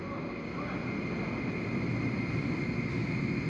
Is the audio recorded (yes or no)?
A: yes